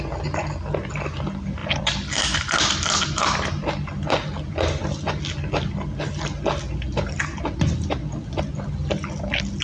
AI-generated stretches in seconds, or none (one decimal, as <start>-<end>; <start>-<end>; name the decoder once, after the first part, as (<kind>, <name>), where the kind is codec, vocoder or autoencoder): 1.6-3.0 (vocoder, BigVGAN v2)